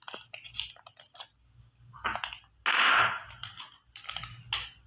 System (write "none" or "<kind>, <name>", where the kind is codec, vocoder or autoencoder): none